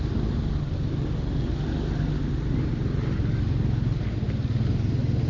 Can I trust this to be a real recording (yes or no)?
yes